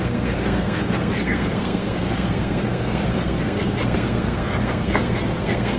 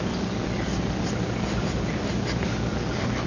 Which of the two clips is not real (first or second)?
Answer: first